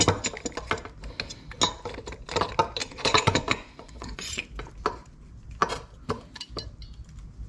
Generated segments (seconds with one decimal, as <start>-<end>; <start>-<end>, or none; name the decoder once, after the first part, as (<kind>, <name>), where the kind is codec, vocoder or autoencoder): 2.8-4.4 (vocoder, Vocos)